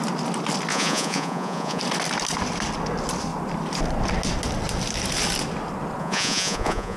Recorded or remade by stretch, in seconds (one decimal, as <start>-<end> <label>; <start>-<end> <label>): 0.0-0.7 recorded; 0.7-1.8 remade; 1.8-6.0 recorded; 6.0-7.0 remade